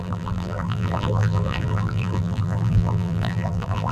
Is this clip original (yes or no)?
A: no